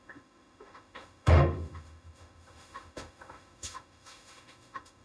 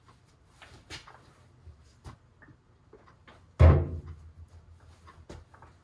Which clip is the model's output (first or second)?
first